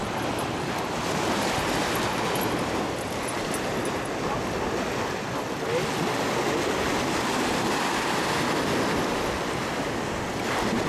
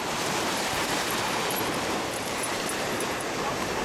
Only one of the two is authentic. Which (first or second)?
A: first